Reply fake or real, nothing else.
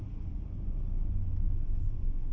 fake